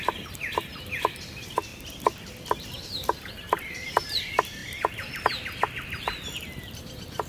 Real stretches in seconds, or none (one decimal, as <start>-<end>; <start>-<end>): 1.7-2.6; 4.6-6.4